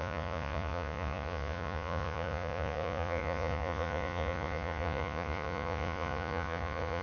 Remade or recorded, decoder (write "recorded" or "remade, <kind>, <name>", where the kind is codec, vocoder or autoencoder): remade, vocoder, Vocos